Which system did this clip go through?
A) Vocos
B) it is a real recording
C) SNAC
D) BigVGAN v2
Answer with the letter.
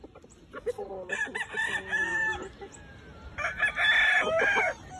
B